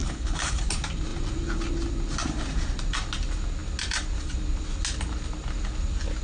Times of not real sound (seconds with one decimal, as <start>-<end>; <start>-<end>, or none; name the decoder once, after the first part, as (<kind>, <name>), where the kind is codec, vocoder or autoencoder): 0.0-0.6 (codec, HILCodec)